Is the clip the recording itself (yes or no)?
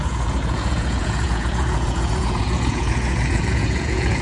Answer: no